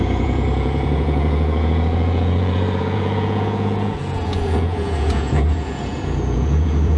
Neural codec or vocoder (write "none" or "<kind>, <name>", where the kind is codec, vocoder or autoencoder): vocoder, Vocos